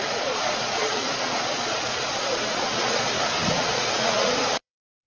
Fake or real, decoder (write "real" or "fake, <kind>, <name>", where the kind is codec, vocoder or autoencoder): fake, vocoder, Vocos